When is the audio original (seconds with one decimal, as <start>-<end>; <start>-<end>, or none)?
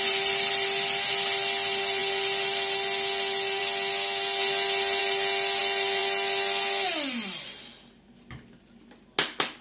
0.0-9.6